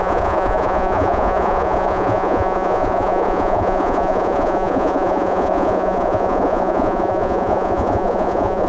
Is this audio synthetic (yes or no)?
yes